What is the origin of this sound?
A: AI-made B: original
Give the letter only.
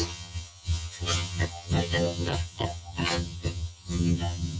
A